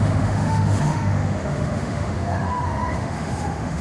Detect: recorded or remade remade